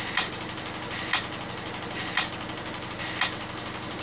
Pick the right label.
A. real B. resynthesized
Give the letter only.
A